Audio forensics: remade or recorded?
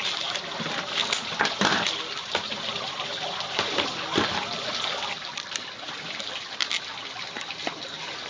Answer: recorded